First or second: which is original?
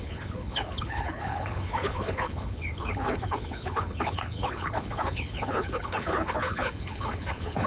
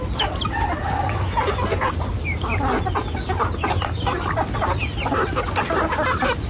second